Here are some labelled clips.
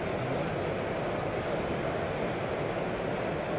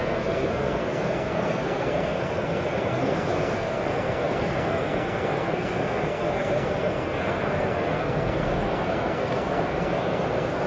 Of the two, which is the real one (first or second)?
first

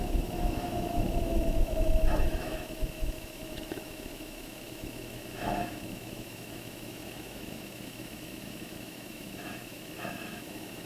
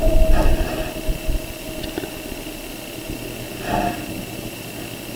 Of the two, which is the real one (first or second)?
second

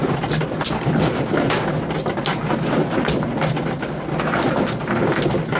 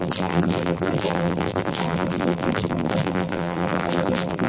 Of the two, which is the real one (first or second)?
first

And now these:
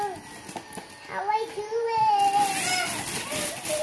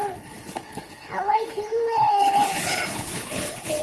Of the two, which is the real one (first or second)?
first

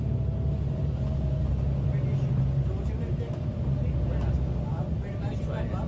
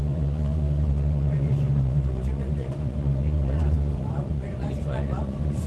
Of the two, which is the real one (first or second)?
first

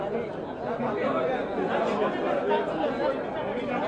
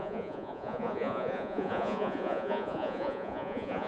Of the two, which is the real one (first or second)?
first